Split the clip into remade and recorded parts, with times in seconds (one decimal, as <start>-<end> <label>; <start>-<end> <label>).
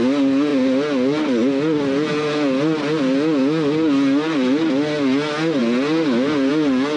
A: 0.0-7.0 recorded